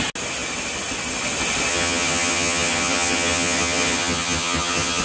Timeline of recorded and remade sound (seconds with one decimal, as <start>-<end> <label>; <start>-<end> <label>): 0.0-1.7 recorded; 1.7-5.0 remade